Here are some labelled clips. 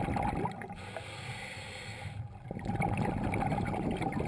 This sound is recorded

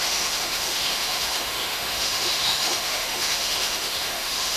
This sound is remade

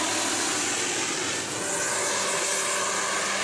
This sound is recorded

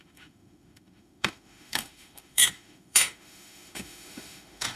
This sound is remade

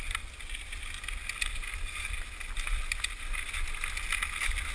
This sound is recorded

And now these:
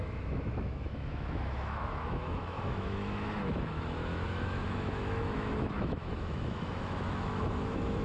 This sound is remade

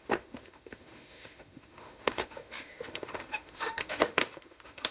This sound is remade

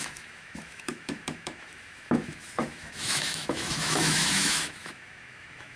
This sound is remade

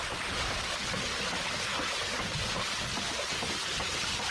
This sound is recorded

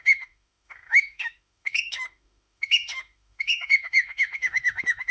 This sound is remade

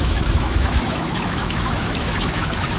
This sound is remade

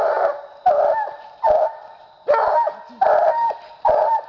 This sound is recorded